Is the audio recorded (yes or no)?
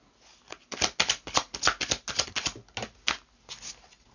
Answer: yes